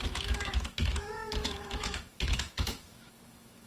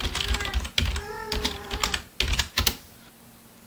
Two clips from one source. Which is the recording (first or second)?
second